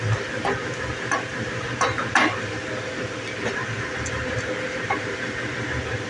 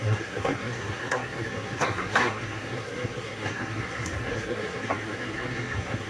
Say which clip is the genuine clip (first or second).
first